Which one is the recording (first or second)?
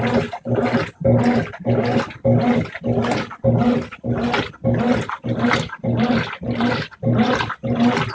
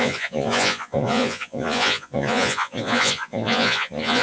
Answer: first